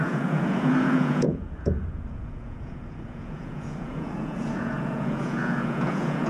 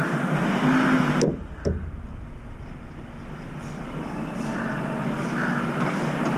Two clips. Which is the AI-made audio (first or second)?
first